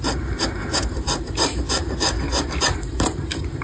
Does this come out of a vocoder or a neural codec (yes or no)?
yes